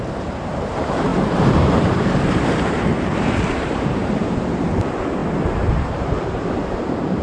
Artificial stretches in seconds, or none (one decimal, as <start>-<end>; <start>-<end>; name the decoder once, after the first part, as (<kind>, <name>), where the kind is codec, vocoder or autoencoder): 0.0-5.2 (vocoder, BigVGAN v2); 5.9-7.2